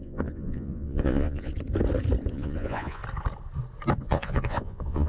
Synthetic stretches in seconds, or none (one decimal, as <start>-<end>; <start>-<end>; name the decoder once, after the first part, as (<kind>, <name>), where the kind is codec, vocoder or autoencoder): 0.0-1.5 (vocoder, Vocos); 2.3-3.0; 4.0-5.1